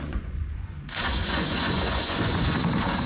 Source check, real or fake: fake